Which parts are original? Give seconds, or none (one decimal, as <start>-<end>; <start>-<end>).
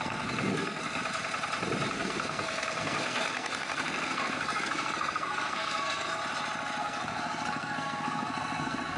1.0-1.9; 6.2-6.8